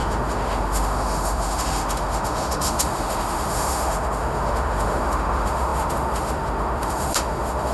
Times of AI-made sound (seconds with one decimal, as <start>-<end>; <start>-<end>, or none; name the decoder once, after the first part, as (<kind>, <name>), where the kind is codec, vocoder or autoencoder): 0.0-7.7 (autoencoder, DAC-VAE)